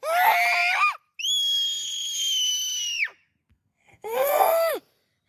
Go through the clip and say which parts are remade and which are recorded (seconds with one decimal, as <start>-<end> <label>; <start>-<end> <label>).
0.0-3.5 recorded; 3.5-4.7 remade; 4.7-5.3 recorded